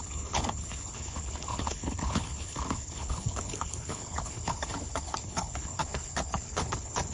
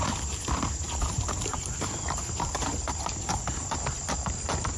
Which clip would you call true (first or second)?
second